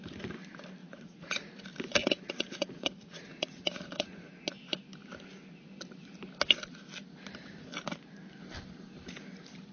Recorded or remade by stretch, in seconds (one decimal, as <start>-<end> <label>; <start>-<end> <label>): 0.0-0.8 recorded; 0.8-1.5 remade; 1.5-2.0 recorded; 2.0-4.3 remade; 4.3-9.7 recorded